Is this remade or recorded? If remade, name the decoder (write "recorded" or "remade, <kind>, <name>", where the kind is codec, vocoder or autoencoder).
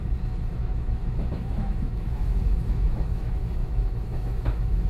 remade, autoencoder, DAC-VAE